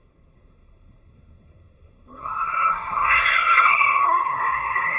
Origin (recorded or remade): remade